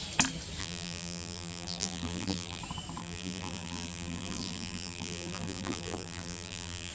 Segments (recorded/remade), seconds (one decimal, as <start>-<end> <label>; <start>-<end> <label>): 0.0-0.6 recorded; 0.6-2.6 remade; 2.6-3.0 recorded; 3.0-6.9 remade